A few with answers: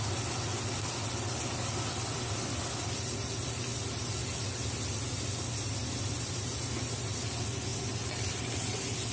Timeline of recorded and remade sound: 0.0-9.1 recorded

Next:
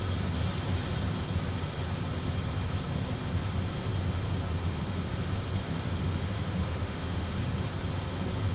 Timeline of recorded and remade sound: 0.0-4.6 recorded; 4.6-5.1 remade; 5.1-5.6 recorded; 5.6-7.3 remade; 7.3-8.5 recorded

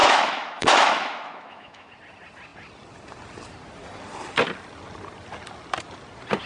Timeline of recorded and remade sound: 0.0-1.9 remade; 1.9-6.5 recorded

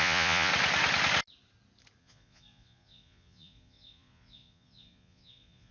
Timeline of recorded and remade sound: 0.0-0.5 remade; 0.5-2.0 recorded; 2.0-5.7 remade

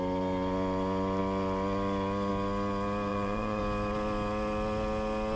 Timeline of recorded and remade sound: 0.0-3.1 recorded; 3.1-3.6 remade; 3.6-5.4 recorded

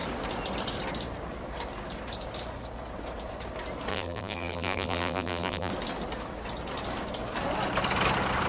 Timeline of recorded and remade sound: 0.0-3.9 recorded; 3.9-5.7 remade; 5.7-8.5 recorded